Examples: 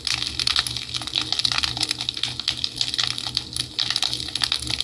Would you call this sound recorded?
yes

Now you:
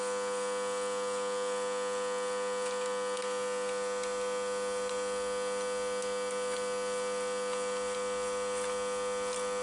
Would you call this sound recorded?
yes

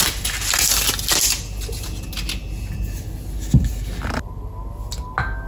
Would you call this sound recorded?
yes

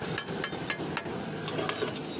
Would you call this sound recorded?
yes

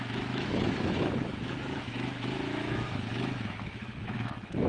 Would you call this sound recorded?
no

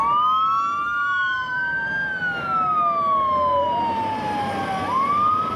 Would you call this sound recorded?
yes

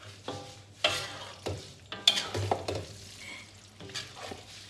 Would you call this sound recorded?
yes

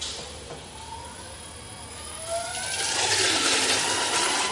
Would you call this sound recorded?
yes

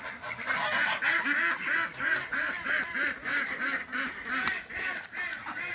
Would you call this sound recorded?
yes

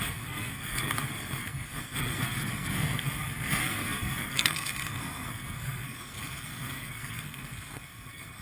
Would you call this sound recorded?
no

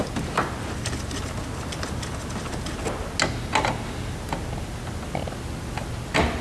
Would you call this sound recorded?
yes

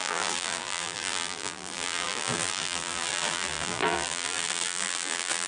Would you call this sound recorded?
no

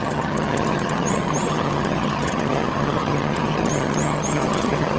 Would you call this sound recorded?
no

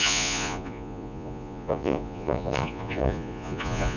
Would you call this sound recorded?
no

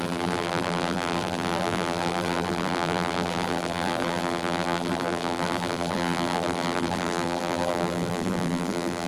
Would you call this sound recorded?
no